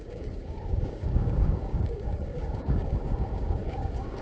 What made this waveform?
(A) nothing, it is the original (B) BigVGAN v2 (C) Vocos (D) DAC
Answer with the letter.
D